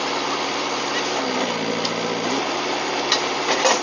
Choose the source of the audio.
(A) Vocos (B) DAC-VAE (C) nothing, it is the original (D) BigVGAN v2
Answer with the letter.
D